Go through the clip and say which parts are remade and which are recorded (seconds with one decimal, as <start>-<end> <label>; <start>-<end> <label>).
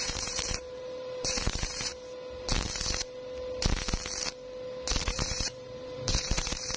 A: 0.0-1.9 remade; 1.9-5.0 recorded; 5.0-6.8 remade